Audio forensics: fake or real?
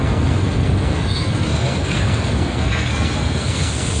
fake